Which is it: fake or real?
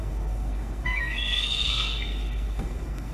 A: fake